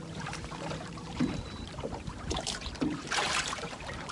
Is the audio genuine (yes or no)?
no